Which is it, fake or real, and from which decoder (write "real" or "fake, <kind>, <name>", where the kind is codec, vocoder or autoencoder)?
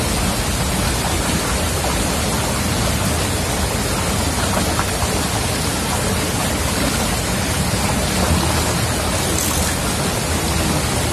real